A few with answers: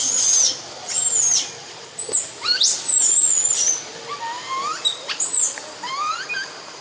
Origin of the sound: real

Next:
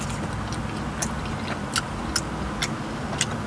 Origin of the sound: real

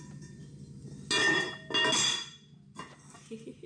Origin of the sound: real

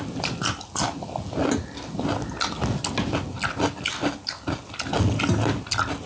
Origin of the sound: real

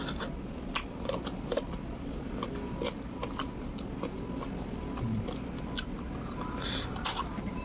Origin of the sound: real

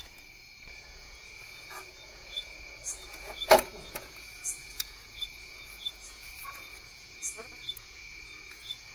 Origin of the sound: fake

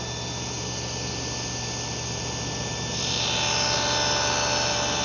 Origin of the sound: real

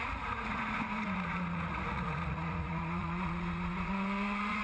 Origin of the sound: fake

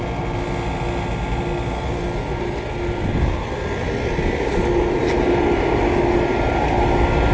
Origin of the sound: real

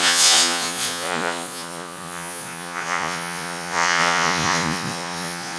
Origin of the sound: fake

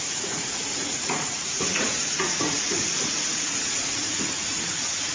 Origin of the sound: fake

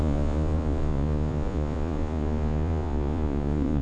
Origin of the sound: fake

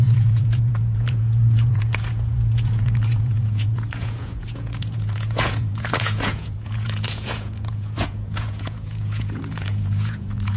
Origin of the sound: fake